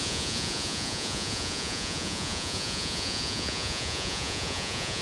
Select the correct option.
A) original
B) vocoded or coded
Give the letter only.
B